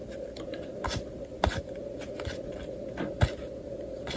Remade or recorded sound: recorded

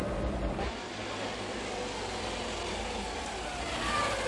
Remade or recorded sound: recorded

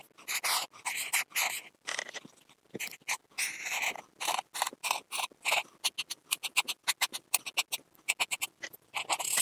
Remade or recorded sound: recorded